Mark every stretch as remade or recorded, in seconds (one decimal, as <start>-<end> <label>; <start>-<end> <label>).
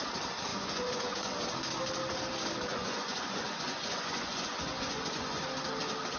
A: 0.0-0.5 recorded; 0.5-1.4 remade; 1.4-2.7 recorded; 2.7-5.4 remade; 5.4-6.2 recorded